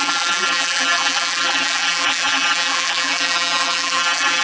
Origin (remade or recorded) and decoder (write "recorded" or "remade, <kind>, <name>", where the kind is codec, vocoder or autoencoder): remade, vocoder, BigVGAN v2